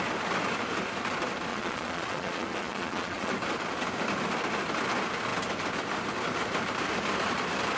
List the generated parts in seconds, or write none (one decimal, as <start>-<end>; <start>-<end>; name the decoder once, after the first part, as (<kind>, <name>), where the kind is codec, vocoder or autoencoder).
1.5-3.3 (vocoder, Vocos)

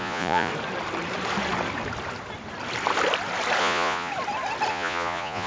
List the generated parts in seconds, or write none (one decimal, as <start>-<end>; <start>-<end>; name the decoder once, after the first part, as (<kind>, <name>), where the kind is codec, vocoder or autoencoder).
0.0-0.5 (vocoder, Vocos); 3.6-4.1; 4.7-5.5